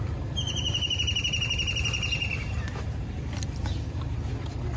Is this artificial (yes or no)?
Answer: yes